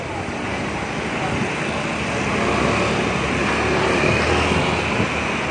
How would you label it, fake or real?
real